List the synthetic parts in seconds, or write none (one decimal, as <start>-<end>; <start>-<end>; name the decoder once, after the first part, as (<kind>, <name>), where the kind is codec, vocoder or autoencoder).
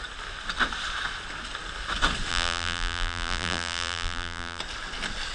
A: 2.3-4.6 (vocoder, BigVGAN v2)